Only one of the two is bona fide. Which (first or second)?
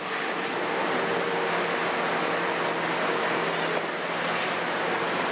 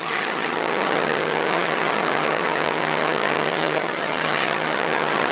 first